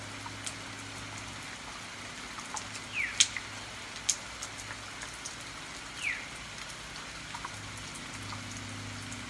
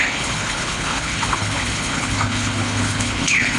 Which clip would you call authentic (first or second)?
first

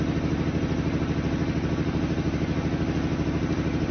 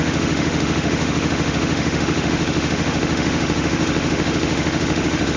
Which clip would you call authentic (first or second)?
first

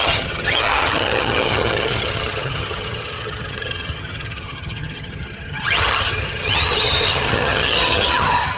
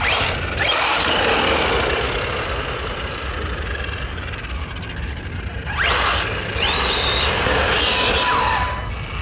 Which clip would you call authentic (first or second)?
second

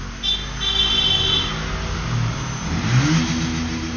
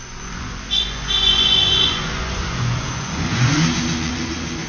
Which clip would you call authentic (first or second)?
first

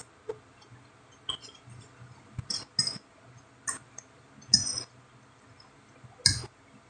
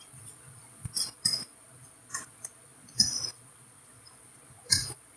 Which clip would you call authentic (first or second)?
first